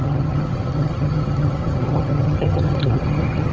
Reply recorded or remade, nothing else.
remade